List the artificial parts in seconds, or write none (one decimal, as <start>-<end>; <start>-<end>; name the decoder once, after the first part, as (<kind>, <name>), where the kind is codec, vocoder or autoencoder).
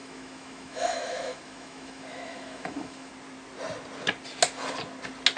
0.0-3.1 (autoencoder, DAC-VAE)